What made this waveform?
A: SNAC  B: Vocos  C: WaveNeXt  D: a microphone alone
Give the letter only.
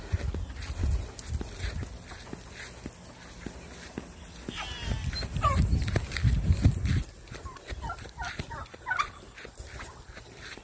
D